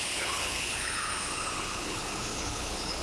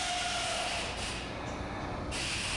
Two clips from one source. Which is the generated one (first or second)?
first